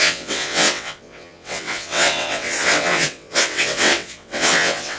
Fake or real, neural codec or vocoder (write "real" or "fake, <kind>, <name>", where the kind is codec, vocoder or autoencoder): fake, vocoder, WaveNeXt